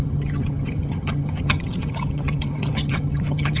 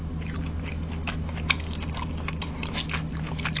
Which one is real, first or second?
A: second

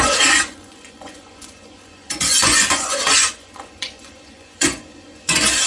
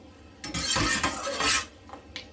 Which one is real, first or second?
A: second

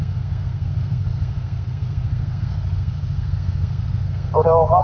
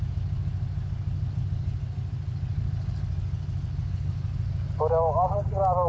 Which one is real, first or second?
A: second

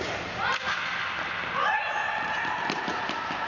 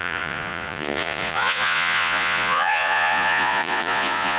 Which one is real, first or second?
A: first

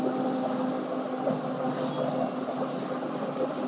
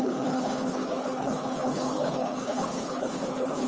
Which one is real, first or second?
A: first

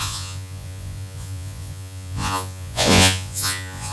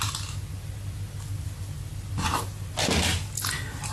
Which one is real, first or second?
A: second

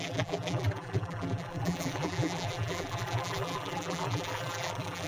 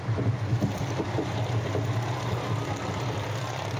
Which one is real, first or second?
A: second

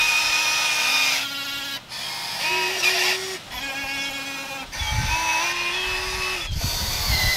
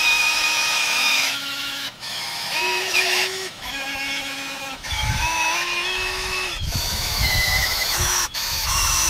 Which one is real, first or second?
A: first